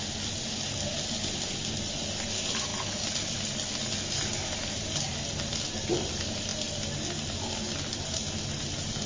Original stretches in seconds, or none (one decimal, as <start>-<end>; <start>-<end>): 0.0-9.1